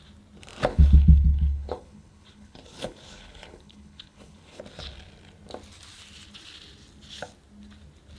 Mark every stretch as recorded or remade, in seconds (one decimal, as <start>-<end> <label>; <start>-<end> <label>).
0.0-0.7 recorded; 0.7-4.6 remade; 4.6-8.2 recorded